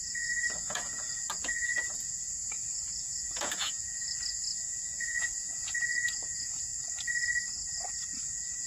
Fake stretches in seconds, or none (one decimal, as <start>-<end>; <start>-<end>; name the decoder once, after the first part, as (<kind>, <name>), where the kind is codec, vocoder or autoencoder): 0.0-6.7 (vocoder, Vocos); 8.2-8.7